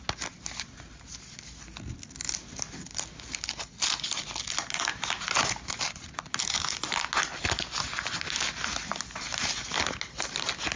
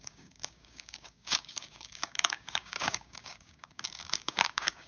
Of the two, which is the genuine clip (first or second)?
first